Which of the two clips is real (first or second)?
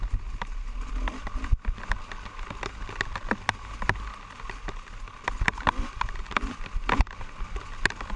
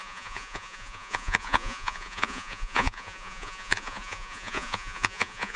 first